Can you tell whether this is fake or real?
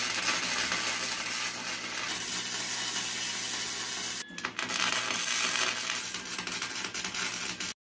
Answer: real